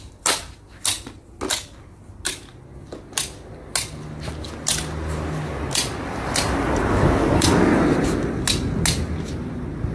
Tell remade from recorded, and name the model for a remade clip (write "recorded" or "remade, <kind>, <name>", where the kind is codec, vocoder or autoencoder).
recorded